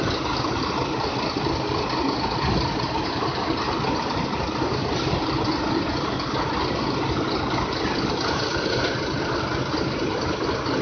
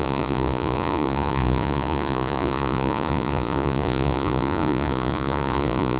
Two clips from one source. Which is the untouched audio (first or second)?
first